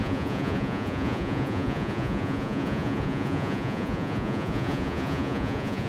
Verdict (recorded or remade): remade